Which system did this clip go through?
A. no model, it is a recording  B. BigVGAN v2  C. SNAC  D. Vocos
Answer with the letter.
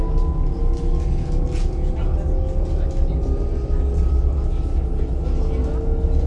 A